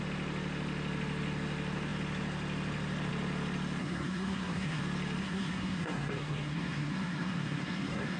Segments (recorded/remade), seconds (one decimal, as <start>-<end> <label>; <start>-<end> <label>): 0.0-3.8 recorded; 3.8-4.8 remade; 4.8-5.2 recorded; 5.2-8.2 remade